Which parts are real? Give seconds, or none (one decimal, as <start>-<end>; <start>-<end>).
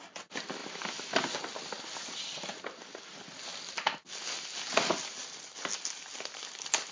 0.0-6.9